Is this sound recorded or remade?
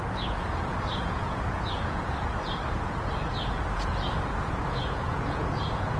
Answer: remade